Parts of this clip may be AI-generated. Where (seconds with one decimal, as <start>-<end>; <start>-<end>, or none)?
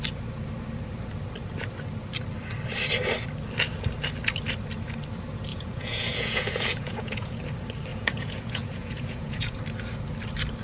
5.5-7.4; 7.9-9.6